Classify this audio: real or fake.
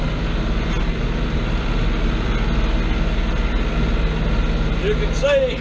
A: real